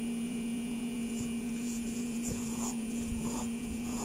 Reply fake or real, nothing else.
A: fake